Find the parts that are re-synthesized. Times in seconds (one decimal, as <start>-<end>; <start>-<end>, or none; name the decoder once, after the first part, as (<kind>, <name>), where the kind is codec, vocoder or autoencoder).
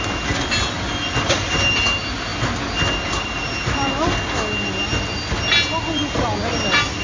none